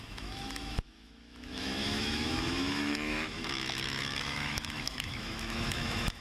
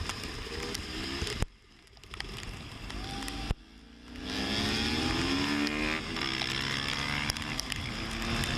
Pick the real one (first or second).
second